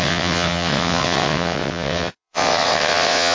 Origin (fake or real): fake